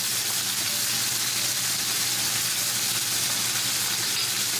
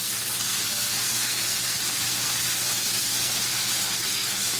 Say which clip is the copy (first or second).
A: second